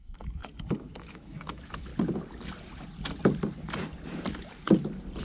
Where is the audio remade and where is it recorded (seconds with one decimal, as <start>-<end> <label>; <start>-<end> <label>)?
0.0-0.4 remade; 0.4-1.1 recorded; 1.1-1.9 remade; 1.9-5.2 recorded